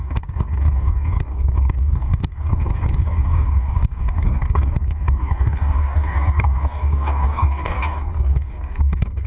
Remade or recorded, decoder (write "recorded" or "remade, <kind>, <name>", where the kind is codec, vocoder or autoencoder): remade, codec, DAC